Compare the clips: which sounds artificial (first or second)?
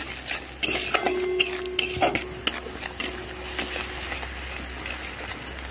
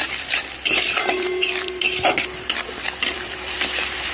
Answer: second